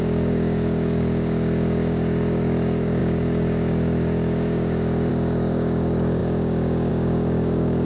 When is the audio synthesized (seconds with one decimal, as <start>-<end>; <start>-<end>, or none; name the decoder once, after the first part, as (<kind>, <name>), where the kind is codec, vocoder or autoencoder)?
0.0-7.9 (codec, DAC)